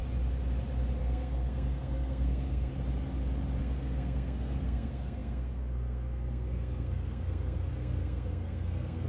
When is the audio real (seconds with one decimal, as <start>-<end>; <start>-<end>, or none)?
0.0-1.0; 2.7-3.6